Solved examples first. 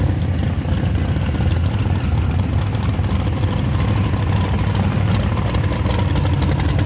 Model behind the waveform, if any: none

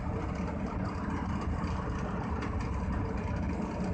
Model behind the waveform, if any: none